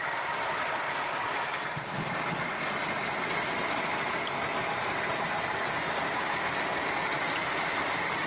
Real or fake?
real